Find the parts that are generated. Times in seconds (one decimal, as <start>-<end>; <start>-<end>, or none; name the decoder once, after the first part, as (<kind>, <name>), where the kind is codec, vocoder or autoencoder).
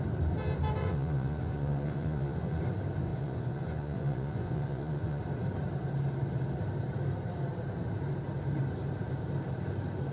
0.8-2.6 (vocoder, Vocos); 3.1-5.2